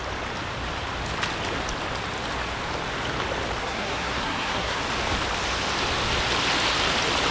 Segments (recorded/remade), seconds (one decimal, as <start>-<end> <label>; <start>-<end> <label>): 0.0-3.6 recorded; 3.6-4.8 remade; 4.8-7.3 recorded